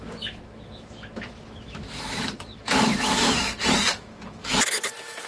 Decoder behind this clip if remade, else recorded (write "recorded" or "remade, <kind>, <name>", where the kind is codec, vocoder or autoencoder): remade, autoencoder, DAC-VAE